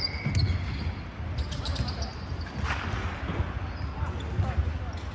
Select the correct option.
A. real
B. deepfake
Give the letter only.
A